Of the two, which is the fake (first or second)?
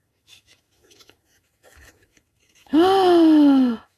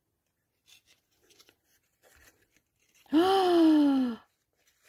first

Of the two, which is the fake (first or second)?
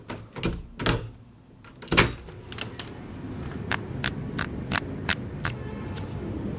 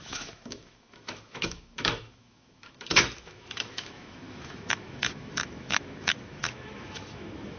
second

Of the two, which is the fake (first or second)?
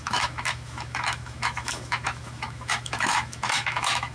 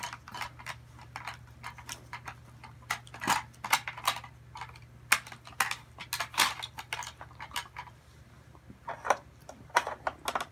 first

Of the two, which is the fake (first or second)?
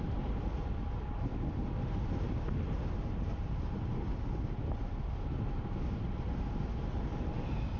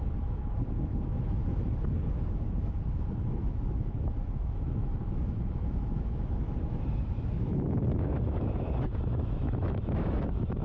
second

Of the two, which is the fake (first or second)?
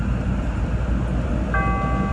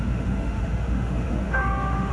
second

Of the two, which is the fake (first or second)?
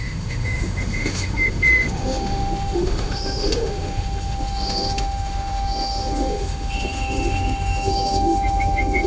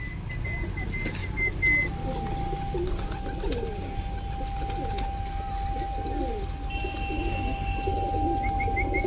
first